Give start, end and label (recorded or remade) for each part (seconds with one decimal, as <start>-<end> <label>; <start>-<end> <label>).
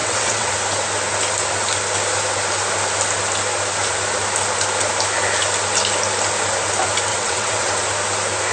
0.0-0.5 remade; 0.5-7.1 recorded; 7.1-7.7 remade; 7.7-8.5 recorded